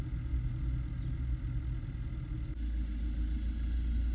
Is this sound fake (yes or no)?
no